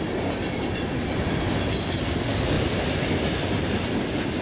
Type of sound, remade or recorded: recorded